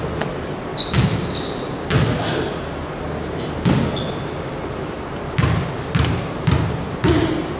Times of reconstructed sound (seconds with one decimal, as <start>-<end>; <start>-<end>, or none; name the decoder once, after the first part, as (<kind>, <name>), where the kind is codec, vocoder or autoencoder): none